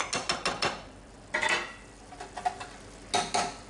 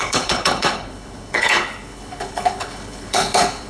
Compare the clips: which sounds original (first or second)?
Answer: first